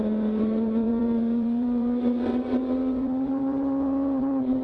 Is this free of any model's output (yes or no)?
no